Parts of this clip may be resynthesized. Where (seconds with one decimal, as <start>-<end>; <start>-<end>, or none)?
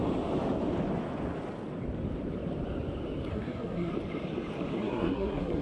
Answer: 3.3-3.9; 4.8-5.6